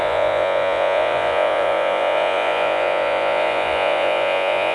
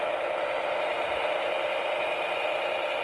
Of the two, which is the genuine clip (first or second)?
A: second